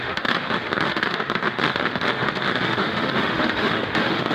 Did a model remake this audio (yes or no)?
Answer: yes